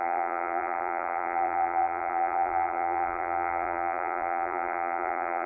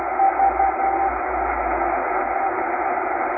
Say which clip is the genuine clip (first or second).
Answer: second